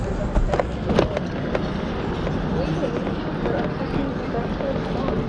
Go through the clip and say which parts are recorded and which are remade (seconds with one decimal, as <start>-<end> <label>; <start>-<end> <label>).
0.0-5.3 recorded